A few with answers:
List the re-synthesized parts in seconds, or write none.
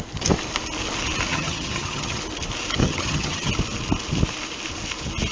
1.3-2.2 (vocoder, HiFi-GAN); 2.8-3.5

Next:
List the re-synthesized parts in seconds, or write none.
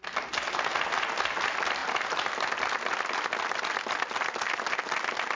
none